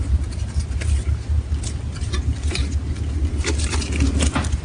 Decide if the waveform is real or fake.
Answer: real